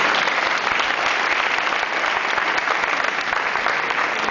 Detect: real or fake real